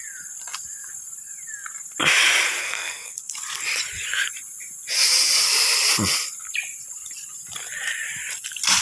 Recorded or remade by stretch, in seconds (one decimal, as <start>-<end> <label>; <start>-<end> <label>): 0.0-2.6 recorded; 2.6-3.3 remade; 3.3-8.8 recorded